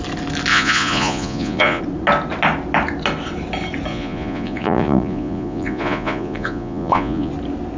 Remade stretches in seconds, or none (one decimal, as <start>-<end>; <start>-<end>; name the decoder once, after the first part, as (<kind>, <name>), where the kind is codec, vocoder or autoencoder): 0.5-1.8 (vocoder, Vocos); 3.9-7.3